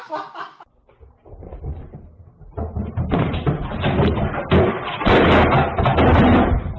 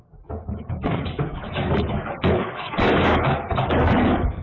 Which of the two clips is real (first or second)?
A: first